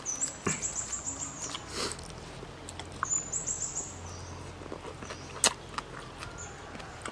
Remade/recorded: recorded